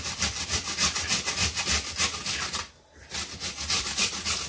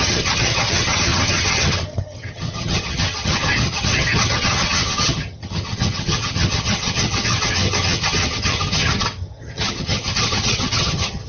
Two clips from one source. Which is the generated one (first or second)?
second